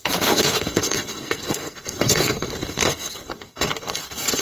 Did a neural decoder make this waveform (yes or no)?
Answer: yes